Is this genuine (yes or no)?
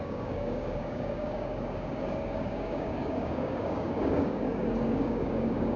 no